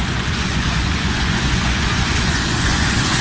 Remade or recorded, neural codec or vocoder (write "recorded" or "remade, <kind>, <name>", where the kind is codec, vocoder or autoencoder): remade, vocoder, Vocos